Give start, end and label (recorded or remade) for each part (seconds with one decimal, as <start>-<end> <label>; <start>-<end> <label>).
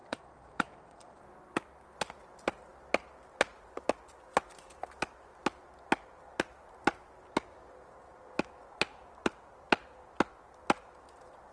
0.0-1.2 remade; 1.2-11.5 recorded